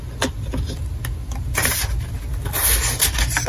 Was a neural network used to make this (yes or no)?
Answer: no